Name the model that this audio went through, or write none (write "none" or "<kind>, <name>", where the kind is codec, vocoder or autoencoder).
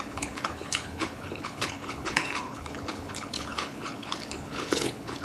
codec, HILCodec